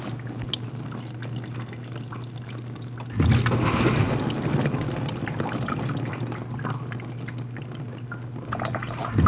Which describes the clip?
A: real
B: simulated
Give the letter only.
A